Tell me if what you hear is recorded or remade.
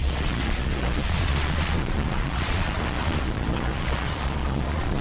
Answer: remade